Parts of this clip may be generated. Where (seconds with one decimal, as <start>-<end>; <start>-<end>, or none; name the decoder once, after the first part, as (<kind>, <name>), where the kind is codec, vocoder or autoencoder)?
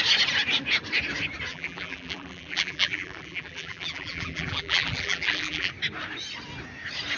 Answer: 1.5-5.7 (vocoder, BigVGAN v2)